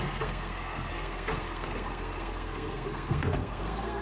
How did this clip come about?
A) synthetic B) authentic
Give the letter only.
A